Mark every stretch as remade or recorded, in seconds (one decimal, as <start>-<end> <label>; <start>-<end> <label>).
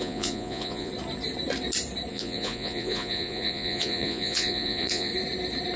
0.0-0.9 remade; 0.9-2.1 recorded; 2.1-5.1 remade; 5.1-5.8 recorded